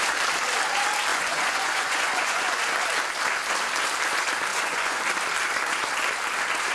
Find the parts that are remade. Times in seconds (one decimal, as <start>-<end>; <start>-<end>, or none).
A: 1.1-2.6; 4.5-5.0